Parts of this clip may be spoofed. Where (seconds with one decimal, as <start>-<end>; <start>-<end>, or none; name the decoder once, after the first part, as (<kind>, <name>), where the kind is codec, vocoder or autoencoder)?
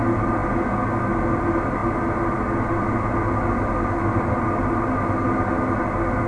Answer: none